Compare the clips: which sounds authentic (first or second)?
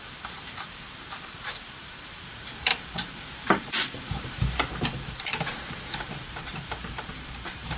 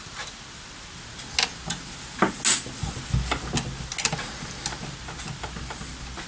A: second